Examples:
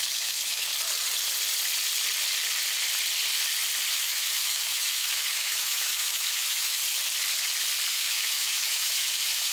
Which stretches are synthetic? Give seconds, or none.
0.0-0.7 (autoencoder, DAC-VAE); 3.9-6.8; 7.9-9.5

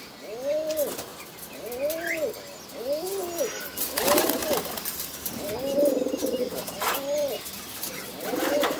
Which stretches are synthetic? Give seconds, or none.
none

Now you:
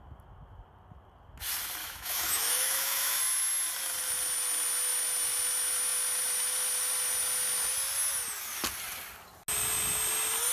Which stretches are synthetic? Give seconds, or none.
1.8-3.2 (autoencoder, DAC-VAE)

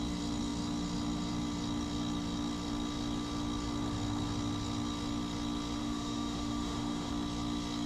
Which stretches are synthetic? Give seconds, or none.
5.8-7.1 (autoencoder, DAC-VAE)

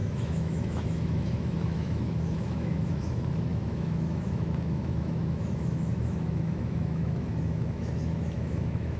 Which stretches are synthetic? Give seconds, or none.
0.0-9.0 (autoencoder, DAC-VAE)

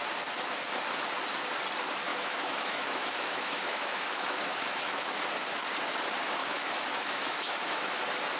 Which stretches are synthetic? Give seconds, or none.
2.1-5.2 (autoencoder, DAC-VAE); 6.4-8.0